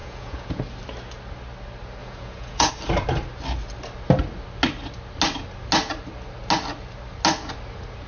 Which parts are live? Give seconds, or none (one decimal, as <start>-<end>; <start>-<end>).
0.6-2.0; 2.7-8.1